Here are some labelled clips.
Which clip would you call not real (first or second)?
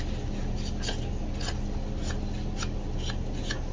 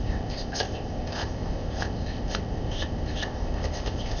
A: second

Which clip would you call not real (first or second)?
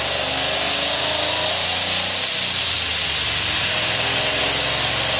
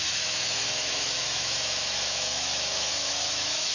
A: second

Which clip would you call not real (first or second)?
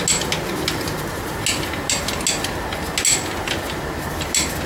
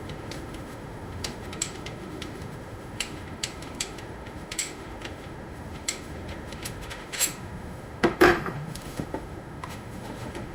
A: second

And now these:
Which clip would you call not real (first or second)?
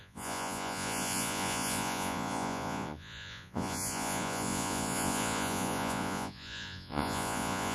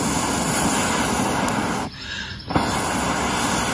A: first